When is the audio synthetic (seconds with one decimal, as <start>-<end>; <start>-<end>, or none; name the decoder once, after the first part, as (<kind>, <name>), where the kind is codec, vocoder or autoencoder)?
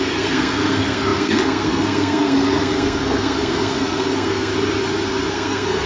0.0-4.5 (codec, SNAC); 5.3-5.9